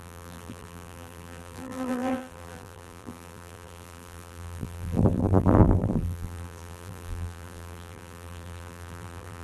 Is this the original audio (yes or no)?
no